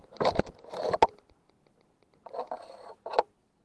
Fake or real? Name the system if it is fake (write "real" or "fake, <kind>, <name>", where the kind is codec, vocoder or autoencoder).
real